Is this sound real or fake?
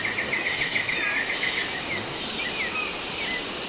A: real